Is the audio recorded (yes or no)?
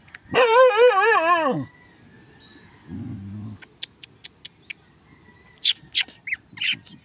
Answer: yes